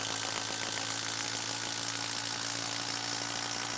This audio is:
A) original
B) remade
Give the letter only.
A